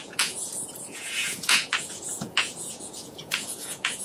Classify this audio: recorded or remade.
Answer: remade